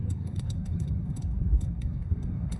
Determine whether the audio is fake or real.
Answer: fake